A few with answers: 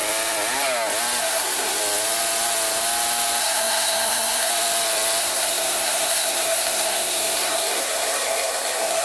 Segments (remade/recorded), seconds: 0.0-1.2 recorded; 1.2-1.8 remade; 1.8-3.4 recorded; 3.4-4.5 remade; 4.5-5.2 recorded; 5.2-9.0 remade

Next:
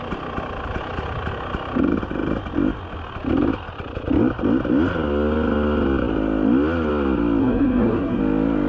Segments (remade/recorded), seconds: 0.0-7.4 recorded; 7.4-8.2 remade; 8.2-8.7 recorded

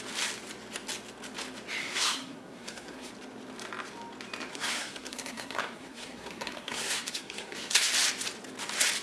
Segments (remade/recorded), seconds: 0.0-1.8 recorded; 1.8-3.1 remade; 3.1-4.5 recorded; 4.5-7.9 remade; 7.9-9.0 recorded

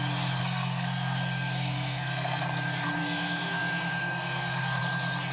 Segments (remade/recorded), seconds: 0.0-0.4 recorded; 0.4-2.4 remade; 2.4-3.0 recorded; 3.0-4.8 remade; 4.8-5.3 recorded